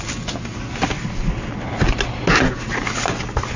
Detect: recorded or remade recorded